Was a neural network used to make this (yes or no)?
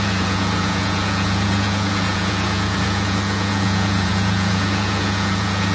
yes